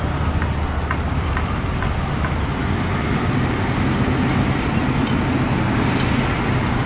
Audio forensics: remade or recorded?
recorded